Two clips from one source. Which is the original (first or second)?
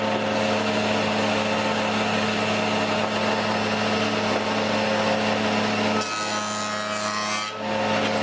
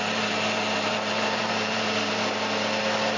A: first